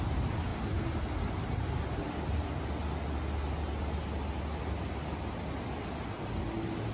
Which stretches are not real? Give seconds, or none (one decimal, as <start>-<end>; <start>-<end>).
none